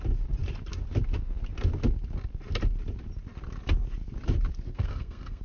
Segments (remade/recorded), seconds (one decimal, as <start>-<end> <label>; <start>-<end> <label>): 0.0-4.7 recorded; 4.7-5.4 remade